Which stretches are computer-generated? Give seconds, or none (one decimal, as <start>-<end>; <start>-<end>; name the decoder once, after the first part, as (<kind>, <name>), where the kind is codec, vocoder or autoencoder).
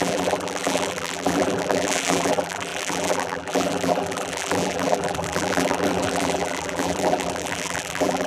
0.0-8.3 (vocoder, BigVGAN v2)